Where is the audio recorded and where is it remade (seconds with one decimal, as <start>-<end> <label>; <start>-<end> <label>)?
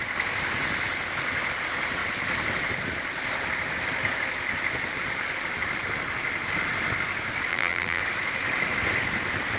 0.0-7.5 recorded; 7.5-8.0 remade; 8.0-9.6 recorded